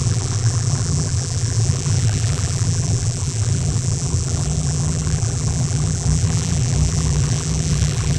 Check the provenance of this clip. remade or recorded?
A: remade